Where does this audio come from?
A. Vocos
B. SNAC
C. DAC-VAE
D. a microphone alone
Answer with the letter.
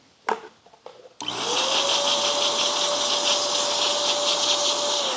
D